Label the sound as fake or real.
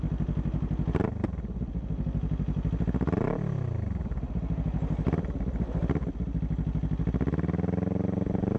real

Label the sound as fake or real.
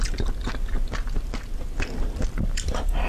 real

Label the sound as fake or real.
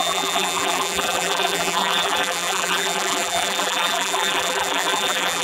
fake